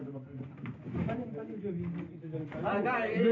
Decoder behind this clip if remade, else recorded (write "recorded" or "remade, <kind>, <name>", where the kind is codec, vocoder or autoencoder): recorded